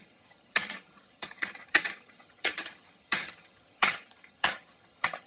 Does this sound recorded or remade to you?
remade